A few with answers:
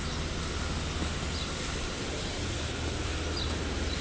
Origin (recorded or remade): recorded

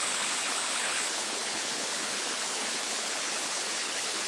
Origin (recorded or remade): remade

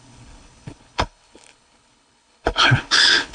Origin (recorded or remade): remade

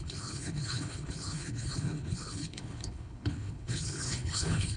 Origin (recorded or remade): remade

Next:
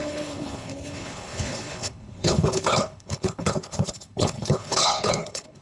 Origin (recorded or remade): remade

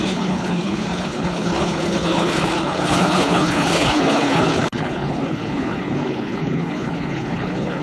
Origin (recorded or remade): remade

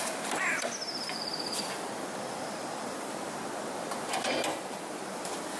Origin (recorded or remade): recorded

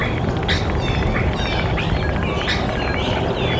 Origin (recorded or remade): recorded